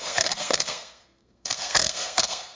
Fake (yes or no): yes